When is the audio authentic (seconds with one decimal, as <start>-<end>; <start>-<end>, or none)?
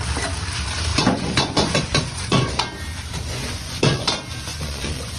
0.0-0.9; 2.6-3.3; 4.1-4.5